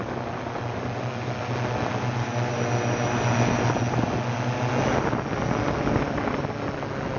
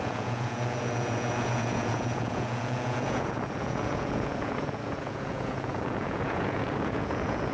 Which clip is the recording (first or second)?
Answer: first